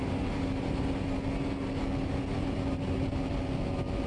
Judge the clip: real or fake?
real